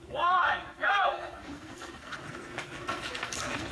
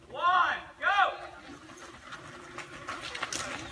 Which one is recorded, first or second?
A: second